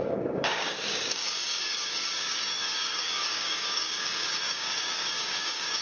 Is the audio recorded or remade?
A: remade